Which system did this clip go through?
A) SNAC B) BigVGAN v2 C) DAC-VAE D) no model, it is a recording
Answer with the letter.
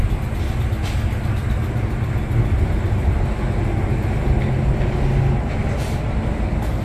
D